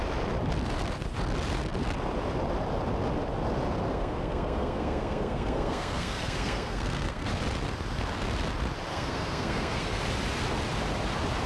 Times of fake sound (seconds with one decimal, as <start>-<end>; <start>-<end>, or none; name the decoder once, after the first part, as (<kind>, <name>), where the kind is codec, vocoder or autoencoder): 3.9-7.3 (codec, SNAC); 8.9-10.0

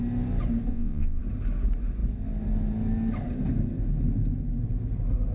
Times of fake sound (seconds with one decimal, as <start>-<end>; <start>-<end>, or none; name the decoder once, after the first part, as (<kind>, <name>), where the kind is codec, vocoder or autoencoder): 0.7-1.2 (vocoder, Vocos)